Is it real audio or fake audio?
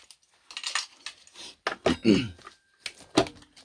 real